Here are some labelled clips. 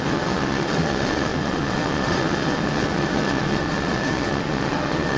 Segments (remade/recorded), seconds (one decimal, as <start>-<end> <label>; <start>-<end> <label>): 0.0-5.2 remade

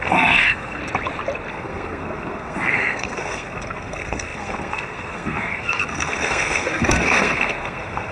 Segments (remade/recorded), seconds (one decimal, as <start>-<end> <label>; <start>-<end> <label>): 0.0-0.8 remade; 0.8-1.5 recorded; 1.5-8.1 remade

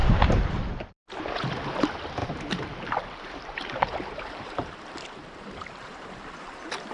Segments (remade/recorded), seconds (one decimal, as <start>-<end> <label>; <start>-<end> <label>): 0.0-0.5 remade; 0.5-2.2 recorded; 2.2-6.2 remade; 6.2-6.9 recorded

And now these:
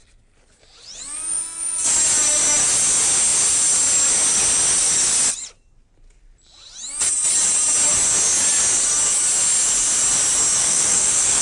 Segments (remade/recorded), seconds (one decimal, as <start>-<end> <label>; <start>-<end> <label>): 0.0-10.6 recorded; 10.6-11.4 remade